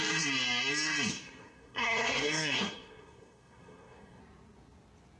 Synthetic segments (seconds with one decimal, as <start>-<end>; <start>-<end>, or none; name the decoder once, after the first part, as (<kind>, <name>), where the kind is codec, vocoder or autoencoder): 1.1-4.2 (codec, SNAC)